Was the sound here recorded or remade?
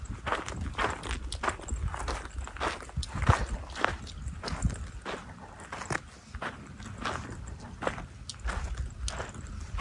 recorded